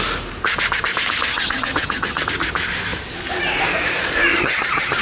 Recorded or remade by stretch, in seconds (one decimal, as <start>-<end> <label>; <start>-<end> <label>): 0.0-1.3 recorded; 1.3-2.2 remade; 2.2-4.3 recorded; 4.3-5.0 remade